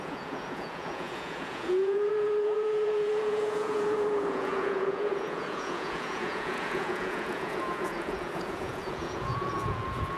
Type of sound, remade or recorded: remade